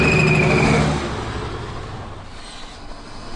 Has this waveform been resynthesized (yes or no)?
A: no